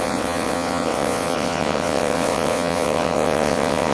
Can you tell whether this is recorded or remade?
remade